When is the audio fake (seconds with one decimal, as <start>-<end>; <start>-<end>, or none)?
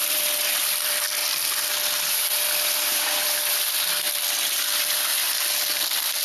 0.0-1.2; 2.1-5.1; 5.6-6.2